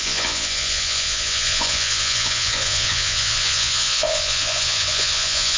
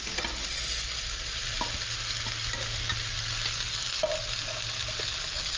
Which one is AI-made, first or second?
first